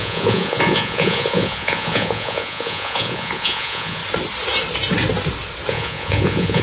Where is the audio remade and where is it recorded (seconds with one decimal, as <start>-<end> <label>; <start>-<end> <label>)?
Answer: 0.0-4.0 remade; 4.0-5.7 recorded; 5.7-6.6 remade